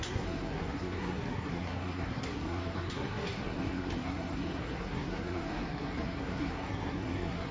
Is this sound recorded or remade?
remade